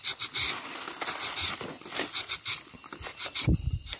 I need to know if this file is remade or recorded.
recorded